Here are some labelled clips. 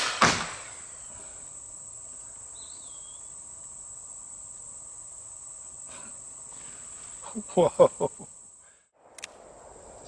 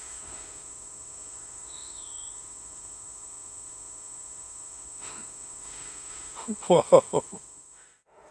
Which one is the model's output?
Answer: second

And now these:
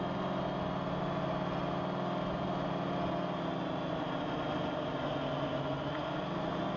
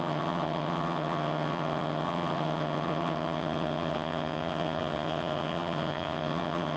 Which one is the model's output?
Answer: second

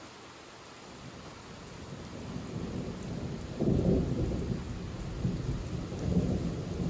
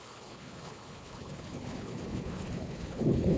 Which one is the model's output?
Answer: second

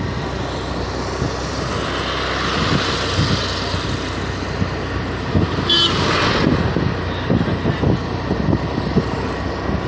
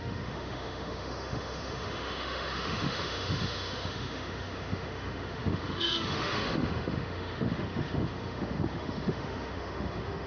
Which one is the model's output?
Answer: second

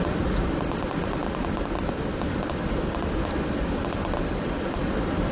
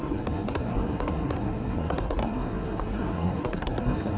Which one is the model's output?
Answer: second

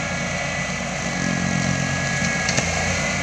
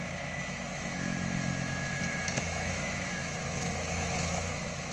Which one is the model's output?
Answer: second